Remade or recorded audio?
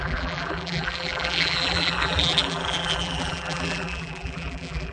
remade